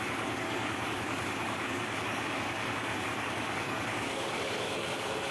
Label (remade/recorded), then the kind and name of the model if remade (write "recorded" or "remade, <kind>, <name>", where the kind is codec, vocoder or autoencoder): remade, codec, DAC